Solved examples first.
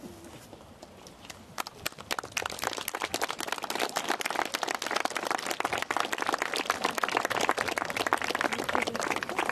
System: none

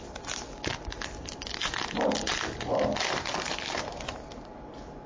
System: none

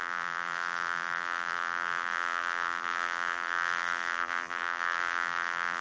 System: vocoder, BigVGAN v2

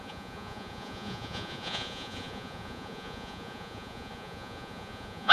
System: vocoder, Vocos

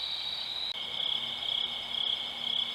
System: none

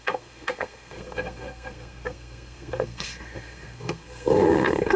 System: codec, SNAC